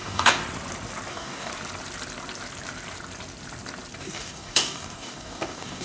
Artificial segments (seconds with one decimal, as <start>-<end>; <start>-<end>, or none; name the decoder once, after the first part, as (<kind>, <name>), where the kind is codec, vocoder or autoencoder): 0.0-0.4 (codec, DAC); 1.1-1.5; 4.0-5.8